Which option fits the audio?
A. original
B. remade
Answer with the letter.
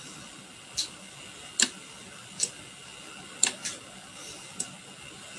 A